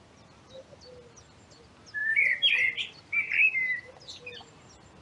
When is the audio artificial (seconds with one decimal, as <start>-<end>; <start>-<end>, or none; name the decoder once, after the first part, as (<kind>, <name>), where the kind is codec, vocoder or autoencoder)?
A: 3.4-3.9 (autoencoder, DAC-VAE)